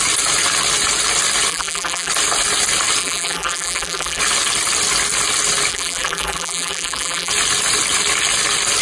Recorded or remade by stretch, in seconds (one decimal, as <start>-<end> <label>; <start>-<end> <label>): 0.0-1.5 recorded; 1.5-2.1 remade; 2.1-3.0 recorded; 3.0-4.2 remade; 4.2-5.7 recorded; 5.7-7.3 remade; 7.3-8.8 recorded